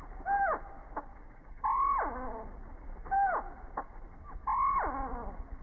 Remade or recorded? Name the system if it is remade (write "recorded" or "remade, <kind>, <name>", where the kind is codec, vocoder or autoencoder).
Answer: recorded